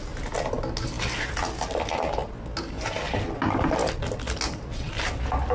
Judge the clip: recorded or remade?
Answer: recorded